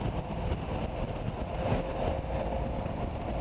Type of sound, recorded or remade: recorded